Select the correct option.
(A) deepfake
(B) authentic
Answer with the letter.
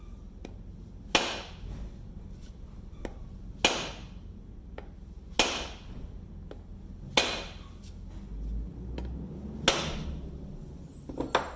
B